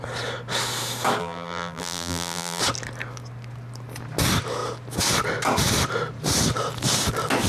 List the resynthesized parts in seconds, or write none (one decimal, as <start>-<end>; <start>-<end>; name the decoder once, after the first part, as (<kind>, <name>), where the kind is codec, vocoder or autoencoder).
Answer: 1.2-2.6 (vocoder, BigVGAN v2)